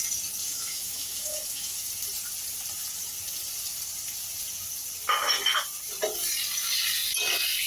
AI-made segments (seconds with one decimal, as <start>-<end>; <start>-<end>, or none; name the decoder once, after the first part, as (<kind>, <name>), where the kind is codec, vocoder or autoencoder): 0.4-1.9 (autoencoder, DAC-VAE)